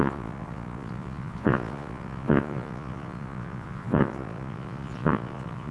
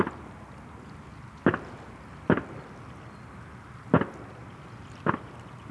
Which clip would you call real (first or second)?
second